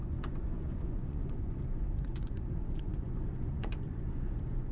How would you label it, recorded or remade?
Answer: remade